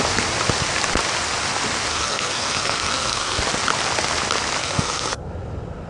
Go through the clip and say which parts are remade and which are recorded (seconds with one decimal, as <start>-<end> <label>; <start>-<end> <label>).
0.0-1.9 recorded; 1.9-3.4 remade; 3.4-4.6 recorded; 4.6-5.2 remade; 5.2-5.9 recorded